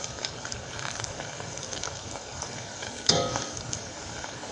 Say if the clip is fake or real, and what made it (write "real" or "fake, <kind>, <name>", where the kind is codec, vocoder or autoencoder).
fake, codec, DAC